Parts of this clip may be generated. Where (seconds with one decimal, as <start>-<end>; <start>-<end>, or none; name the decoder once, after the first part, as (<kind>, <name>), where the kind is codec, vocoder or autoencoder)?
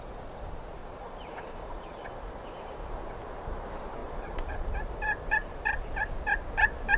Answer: 0.8-2.3 (vocoder, Vocos); 4.0-4.7